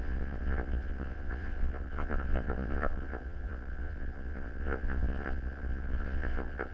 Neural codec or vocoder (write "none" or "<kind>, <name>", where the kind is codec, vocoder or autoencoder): vocoder, Vocos